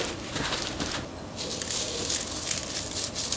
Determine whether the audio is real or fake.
real